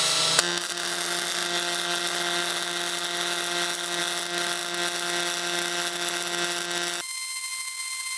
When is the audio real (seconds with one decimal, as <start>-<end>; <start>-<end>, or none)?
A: 0.0-8.2